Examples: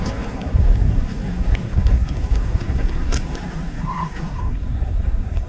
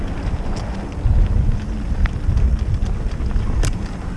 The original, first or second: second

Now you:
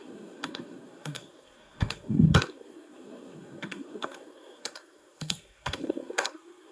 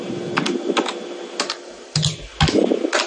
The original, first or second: second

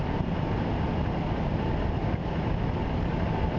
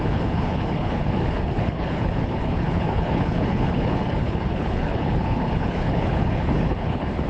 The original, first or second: first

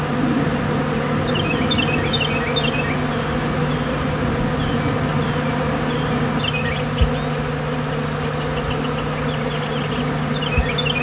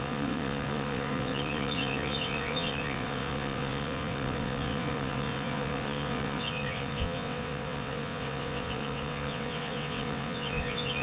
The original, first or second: first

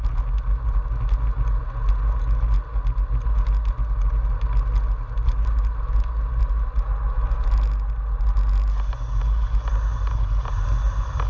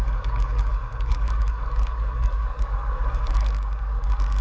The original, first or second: first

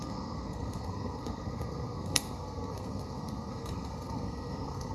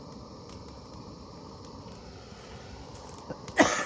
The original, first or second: second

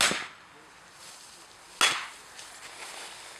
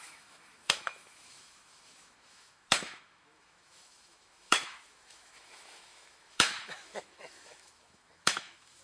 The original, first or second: first